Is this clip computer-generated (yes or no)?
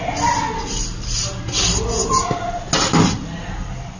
no